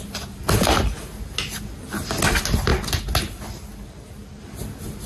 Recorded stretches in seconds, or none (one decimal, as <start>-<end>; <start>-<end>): 0.0-5.1

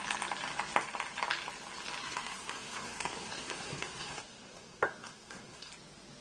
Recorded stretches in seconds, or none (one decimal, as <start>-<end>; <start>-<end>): 0.0-2.0; 5.7-6.2

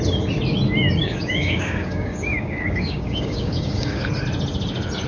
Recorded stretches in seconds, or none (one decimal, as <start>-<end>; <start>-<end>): 0.0-1.0; 4.1-5.1

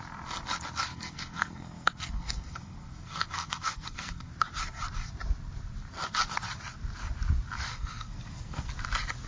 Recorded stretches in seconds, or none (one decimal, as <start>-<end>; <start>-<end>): 0.0-0.9; 4.3-7.7; 8.7-9.3

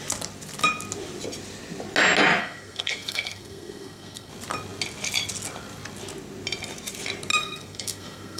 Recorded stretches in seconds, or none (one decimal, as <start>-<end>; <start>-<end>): 0.0-2.4; 4.3-7.3